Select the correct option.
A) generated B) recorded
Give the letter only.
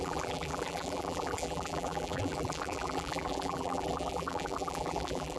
A